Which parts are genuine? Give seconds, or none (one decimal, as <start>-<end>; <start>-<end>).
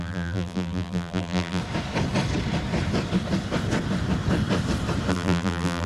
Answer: 1.6-5.1